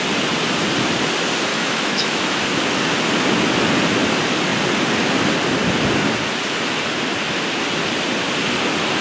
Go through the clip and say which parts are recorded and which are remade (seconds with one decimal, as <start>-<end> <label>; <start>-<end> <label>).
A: 0.0-1.5 recorded; 1.5-2.4 remade; 2.4-9.0 recorded